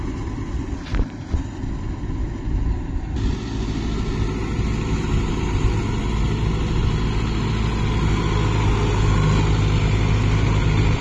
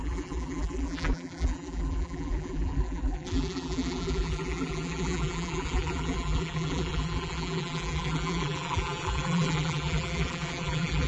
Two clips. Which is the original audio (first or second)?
first